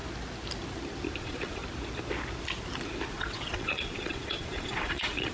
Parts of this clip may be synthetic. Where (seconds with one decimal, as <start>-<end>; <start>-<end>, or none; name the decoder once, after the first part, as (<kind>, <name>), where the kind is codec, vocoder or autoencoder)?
1.2-1.6 (vocoder, Vocos); 3.1-5.3